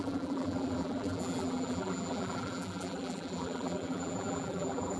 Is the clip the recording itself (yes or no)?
no